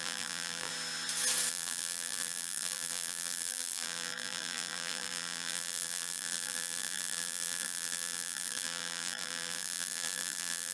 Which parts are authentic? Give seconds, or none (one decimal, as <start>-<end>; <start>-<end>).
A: 0.7-1.5